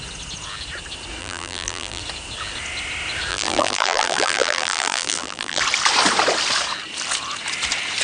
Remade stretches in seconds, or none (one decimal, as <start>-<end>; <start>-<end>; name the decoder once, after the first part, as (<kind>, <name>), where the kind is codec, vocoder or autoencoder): 1.2-2.0 (vocoder, BigVGAN v2); 3.3-5.6